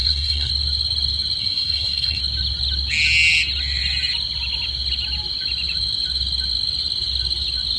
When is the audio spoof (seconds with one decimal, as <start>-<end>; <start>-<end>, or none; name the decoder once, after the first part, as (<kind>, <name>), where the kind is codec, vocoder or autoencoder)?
0.0-0.5 (codec, SNAC); 1.4-2.2